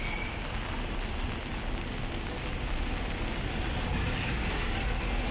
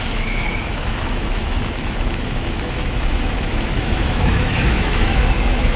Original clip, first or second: first